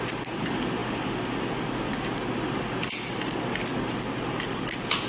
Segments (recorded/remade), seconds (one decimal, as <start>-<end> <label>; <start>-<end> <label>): 0.0-5.1 recorded